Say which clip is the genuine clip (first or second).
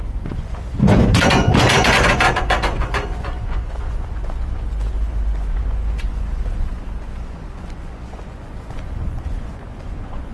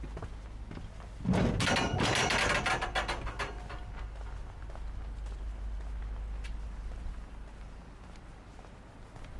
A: second